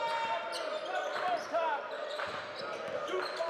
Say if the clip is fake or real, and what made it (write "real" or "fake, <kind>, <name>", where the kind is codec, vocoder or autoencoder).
real